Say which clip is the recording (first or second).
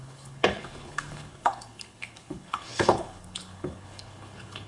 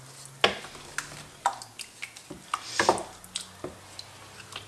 second